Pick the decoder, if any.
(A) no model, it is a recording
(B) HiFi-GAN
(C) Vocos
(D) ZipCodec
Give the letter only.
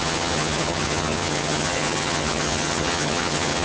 B